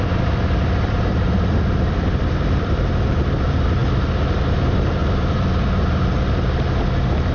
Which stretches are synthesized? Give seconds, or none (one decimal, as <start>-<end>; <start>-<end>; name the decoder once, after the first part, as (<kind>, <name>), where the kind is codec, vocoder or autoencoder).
0.0-3.8 (vocoder, BigVGAN v2); 4.3-5.0